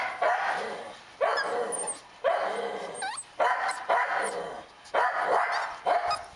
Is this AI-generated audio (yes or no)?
no